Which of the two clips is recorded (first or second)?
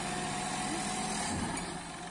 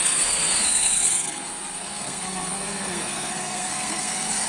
first